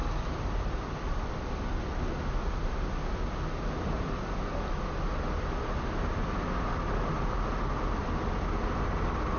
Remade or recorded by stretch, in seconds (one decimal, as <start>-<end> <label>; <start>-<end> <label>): 0.0-1.5 remade; 1.5-9.4 recorded